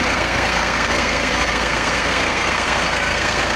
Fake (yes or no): yes